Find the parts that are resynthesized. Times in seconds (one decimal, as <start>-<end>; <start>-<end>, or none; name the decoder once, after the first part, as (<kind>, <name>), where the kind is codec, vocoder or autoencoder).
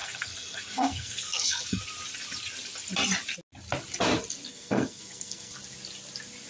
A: 0.0-1.8 (codec, SNAC); 4.5-5.5